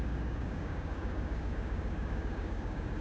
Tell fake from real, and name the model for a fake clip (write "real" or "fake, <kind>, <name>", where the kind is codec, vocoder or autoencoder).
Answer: fake, codec, DAC